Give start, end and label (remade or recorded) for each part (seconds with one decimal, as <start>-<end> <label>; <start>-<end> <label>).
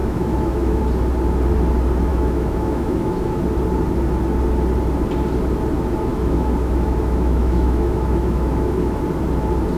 0.0-0.8 remade; 0.8-2.1 recorded; 2.1-3.4 remade; 3.4-6.1 recorded; 6.1-9.0 remade; 9.0-9.8 recorded